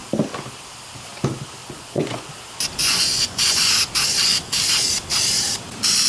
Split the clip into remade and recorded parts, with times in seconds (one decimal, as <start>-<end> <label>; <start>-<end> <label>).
0.0-1.6 recorded; 1.6-2.3 remade; 2.3-2.8 recorded; 2.8-3.7 remade; 3.7-6.1 recorded